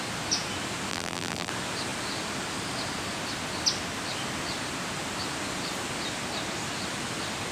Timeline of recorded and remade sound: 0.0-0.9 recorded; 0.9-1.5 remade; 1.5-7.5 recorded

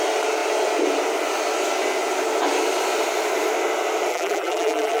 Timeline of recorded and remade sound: 0.0-4.1 recorded; 4.1-5.0 remade

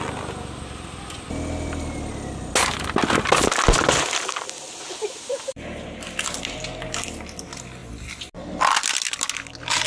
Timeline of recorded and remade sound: 0.0-9.9 recorded

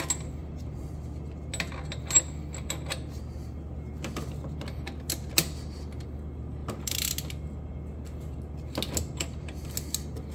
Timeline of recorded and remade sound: 0.0-0.4 recorded; 0.4-0.9 remade; 0.9-6.6 recorded; 6.6-7.1 remade; 7.1-10.3 recorded

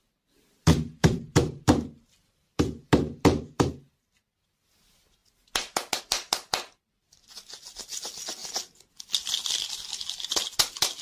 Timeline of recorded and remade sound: 0.0-1.0 recorded; 1.0-3.7 remade; 3.7-11.0 recorded

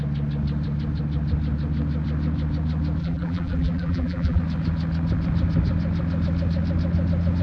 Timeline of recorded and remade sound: 0.0-3.0 recorded; 3.0-4.4 remade; 4.4-7.4 recorded